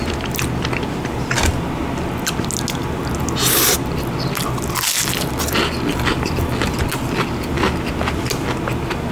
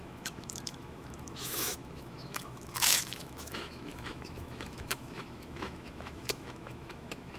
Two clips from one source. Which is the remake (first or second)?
second